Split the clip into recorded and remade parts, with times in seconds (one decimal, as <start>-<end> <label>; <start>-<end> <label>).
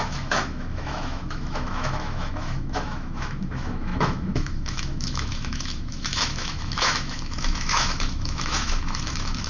0.0-9.5 remade